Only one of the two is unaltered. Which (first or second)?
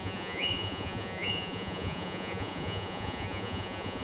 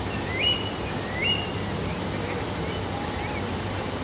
second